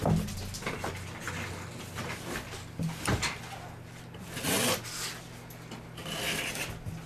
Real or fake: real